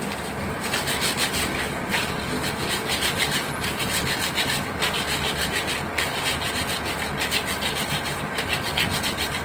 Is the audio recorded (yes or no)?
yes